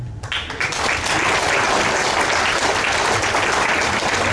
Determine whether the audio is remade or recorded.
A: recorded